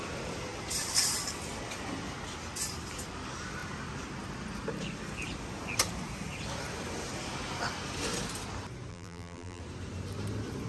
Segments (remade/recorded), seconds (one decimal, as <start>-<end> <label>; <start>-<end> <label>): 0.0-8.9 recorded; 8.9-9.6 remade; 9.6-10.7 recorded